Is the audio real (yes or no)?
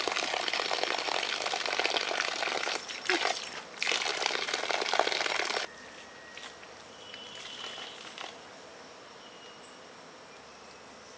yes